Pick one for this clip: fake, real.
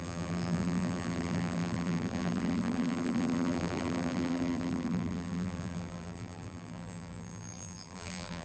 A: fake